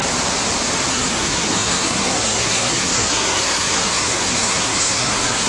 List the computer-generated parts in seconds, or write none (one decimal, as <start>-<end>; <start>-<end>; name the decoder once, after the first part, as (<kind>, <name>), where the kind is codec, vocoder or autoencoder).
0.9-5.5 (codec, SNAC)